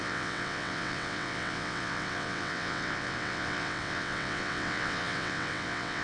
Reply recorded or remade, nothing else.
remade